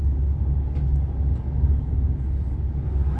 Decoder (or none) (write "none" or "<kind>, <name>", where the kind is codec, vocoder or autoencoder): codec, DAC